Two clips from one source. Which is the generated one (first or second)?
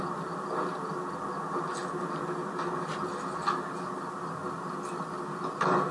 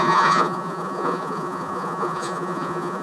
second